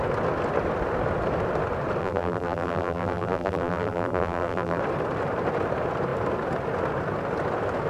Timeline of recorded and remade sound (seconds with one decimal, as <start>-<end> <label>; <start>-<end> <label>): 0.0-2.0 recorded; 2.0-4.8 remade; 4.8-7.9 recorded